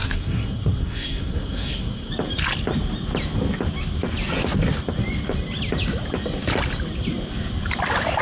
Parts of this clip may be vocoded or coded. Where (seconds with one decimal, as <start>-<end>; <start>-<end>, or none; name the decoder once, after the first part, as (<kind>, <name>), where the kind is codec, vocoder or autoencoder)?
0.0-2.1 (codec, SNAC)